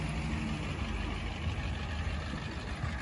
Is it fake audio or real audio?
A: real